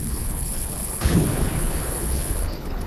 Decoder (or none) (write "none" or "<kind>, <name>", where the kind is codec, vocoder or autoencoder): codec, HILCodec